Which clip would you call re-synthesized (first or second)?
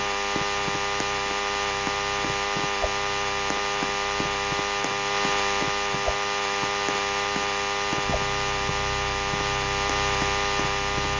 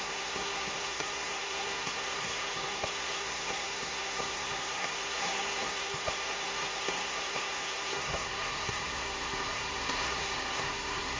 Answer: second